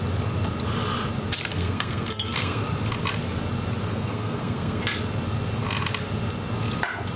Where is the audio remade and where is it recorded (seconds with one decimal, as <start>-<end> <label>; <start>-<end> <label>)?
0.0-1.5 recorded; 1.5-2.6 remade; 2.6-3.9 recorded; 3.9-4.8 remade; 4.8-7.2 recorded